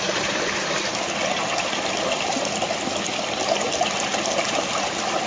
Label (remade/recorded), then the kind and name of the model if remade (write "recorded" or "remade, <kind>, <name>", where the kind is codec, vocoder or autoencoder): recorded